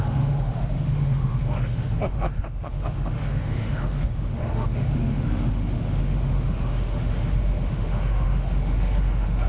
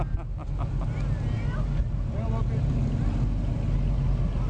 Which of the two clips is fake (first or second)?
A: first